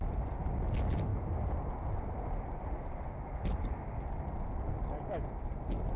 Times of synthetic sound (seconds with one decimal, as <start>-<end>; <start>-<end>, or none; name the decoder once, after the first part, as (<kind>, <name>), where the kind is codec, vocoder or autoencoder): none

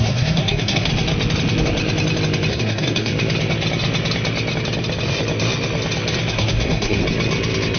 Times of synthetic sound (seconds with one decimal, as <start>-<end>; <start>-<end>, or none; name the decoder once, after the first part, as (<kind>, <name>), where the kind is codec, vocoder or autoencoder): 0.0-0.9 (codec, SNAC); 2.5-3.1; 6.3-7.0

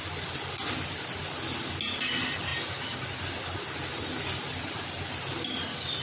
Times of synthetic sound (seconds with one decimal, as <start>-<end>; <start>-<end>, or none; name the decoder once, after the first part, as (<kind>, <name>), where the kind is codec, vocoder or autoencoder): none

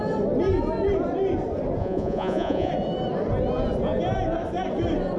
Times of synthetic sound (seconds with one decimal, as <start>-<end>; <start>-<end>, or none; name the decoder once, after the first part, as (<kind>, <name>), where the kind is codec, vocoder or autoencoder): 1.8-2.7 (vocoder, Vocos)